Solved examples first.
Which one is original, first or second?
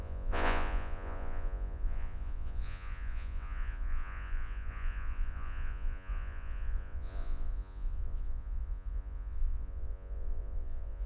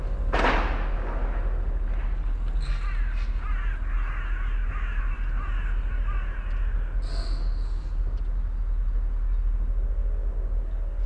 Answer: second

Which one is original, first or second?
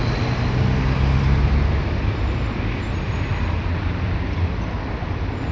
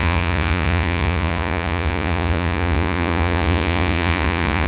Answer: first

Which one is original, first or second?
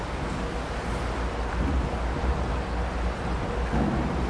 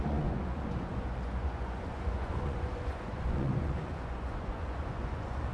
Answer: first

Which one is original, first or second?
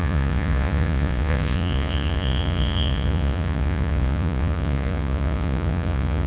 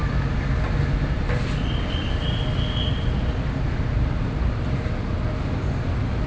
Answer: second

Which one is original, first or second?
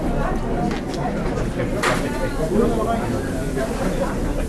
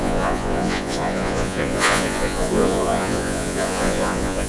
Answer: first